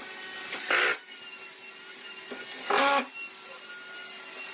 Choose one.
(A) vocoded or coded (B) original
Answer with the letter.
B